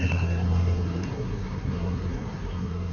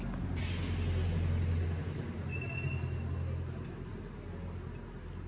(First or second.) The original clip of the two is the second